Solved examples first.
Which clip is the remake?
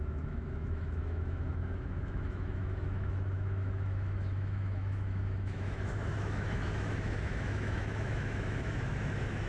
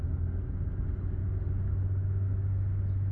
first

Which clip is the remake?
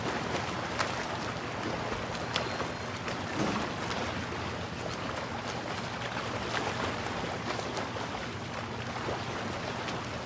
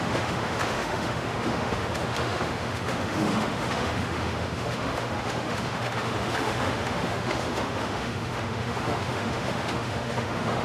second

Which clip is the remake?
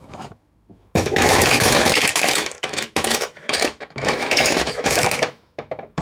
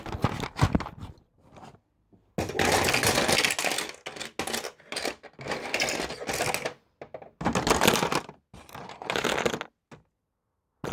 first